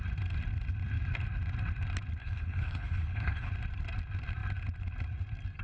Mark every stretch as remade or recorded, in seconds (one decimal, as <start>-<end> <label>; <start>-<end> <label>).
0.0-2.2 recorded; 2.2-3.5 remade; 3.5-5.6 recorded